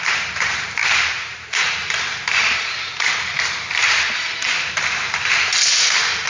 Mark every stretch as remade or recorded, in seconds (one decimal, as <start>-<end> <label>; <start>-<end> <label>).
0.0-6.3 remade